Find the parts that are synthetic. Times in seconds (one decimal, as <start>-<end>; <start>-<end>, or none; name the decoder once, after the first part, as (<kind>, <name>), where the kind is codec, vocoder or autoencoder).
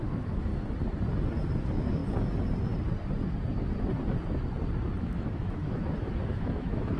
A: 0.0-0.5 (autoencoder, DAC-VAE); 1.6-2.0; 5.0-7.0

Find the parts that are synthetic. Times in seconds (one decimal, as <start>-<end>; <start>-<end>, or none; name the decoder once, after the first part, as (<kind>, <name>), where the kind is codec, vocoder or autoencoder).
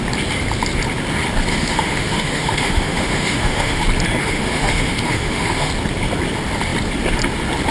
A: 1.5-3.8 (autoencoder, DAC-VAE); 4.2-5.7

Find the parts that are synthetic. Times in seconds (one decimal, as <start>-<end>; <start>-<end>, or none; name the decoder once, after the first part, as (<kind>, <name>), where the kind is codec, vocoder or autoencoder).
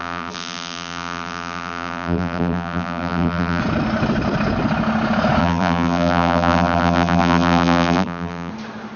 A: 0.0-3.6 (vocoder, BigVGAN v2); 5.4-8.5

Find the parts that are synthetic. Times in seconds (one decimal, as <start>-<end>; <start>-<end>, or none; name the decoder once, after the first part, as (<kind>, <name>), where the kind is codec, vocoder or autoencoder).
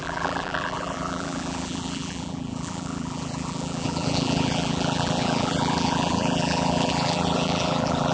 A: 0.0-8.1 (vocoder, BigVGAN v2)